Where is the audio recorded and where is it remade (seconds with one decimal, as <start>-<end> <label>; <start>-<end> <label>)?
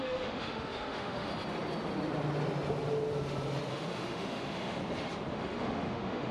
0.0-1.3 remade; 1.3-3.7 recorded; 3.7-4.8 remade; 4.8-5.3 recorded; 5.3-6.3 remade